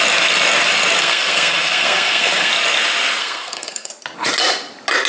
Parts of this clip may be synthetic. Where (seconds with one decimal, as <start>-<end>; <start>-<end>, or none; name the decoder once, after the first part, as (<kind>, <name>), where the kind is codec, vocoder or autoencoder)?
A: 1.0-2.5 (codec, SNAC); 3.2-3.9